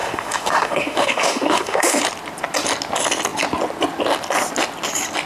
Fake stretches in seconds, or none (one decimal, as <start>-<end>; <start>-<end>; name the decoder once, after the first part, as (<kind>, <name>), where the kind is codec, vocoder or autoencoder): 0.0-2.0 (autoencoder, DAC-VAE)